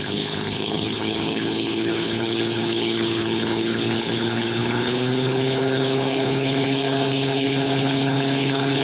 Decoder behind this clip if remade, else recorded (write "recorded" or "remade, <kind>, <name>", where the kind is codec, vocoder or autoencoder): remade, codec, HILCodec